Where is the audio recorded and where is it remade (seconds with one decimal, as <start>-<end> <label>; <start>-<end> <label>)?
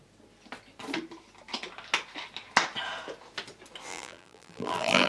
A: 0.0-3.9 recorded; 3.9-5.1 remade